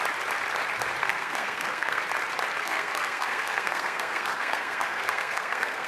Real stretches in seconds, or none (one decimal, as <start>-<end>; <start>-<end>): 0.0-1.0; 2.0-2.6